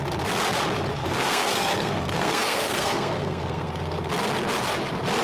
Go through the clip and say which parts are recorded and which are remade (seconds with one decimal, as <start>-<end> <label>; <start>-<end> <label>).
0.0-1.0 recorded; 1.0-4.1 remade; 4.1-5.2 recorded